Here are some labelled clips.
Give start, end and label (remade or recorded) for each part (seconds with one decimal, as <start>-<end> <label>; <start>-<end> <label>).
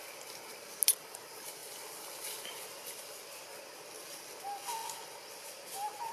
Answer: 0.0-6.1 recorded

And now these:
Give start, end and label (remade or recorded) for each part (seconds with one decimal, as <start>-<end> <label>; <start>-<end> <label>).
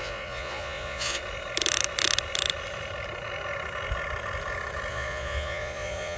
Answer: 0.0-1.2 remade; 1.2-4.9 recorded; 4.9-6.2 remade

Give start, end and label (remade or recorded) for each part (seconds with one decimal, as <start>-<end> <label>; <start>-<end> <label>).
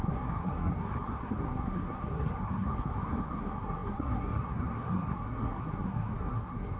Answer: 0.0-6.8 remade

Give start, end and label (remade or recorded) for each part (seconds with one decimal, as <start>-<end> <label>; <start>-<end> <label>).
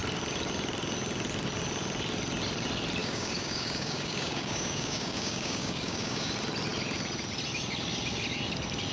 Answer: 0.0-3.0 recorded; 3.0-6.3 remade; 6.3-8.9 recorded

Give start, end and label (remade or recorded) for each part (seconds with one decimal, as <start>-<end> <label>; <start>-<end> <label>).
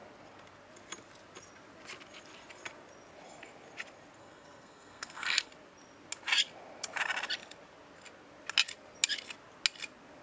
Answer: 0.0-4.2 recorded; 4.2-5.5 remade; 5.5-10.2 recorded